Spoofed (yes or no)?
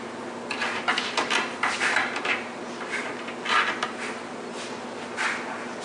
no